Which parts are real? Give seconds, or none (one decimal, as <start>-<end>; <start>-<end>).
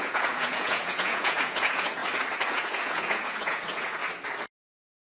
2.0-2.5; 4.0-5.0